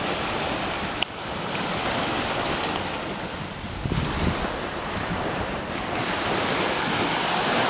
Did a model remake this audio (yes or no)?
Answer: yes